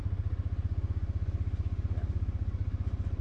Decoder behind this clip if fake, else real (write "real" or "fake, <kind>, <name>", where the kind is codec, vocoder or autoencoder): real